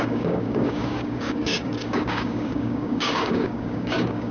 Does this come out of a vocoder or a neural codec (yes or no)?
yes